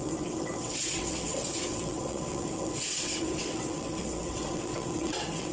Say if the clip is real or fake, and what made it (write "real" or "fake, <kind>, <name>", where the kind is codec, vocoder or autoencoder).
fake, vocoder, WaveNeXt